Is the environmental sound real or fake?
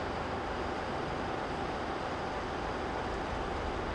fake